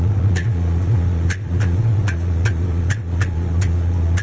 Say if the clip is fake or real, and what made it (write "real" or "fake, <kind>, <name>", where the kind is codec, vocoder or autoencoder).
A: fake, vocoder, Vocos